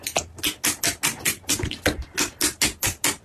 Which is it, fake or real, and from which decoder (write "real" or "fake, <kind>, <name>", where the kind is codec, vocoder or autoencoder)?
real